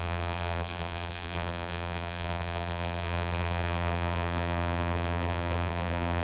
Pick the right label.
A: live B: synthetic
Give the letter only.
B